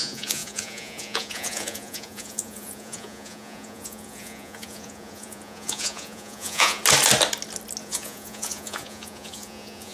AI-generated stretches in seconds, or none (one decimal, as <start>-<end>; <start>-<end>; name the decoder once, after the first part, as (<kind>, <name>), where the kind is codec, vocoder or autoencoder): 0.0-6.8 (vocoder, Vocos); 7.8-9.9